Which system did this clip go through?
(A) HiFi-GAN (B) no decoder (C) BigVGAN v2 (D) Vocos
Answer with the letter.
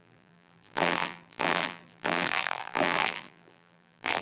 C